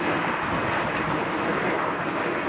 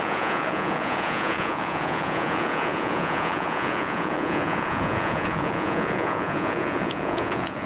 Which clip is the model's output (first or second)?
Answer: second